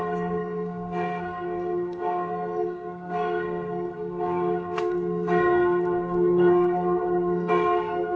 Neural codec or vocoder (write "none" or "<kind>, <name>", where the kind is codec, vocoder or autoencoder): codec, SNAC